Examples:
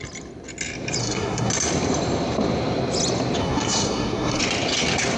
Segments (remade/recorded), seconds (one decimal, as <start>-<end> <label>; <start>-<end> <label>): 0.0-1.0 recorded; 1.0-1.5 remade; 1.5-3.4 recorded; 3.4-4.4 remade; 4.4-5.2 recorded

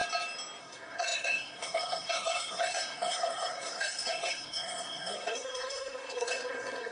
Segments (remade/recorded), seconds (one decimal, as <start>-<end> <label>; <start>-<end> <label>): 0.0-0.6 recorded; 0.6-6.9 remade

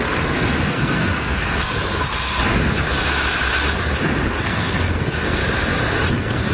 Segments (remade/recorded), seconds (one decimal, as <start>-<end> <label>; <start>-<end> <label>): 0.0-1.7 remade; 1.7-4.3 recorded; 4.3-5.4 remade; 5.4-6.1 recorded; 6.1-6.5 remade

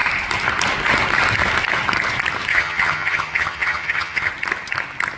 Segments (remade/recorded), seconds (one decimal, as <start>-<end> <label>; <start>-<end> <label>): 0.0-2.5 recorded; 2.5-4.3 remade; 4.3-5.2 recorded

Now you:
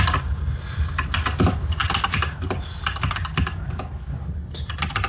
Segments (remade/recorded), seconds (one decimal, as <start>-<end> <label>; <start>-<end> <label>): 0.0-5.1 recorded